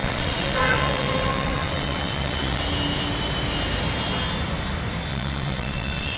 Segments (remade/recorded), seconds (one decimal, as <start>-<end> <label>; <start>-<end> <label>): 0.0-2.6 remade; 2.6-5.1 recorded; 5.1-6.2 remade